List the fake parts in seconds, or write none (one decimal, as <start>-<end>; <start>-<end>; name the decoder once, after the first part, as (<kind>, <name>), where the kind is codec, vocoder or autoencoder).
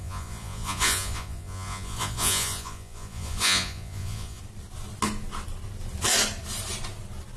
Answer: 0.0-4.4 (vocoder, Vocos)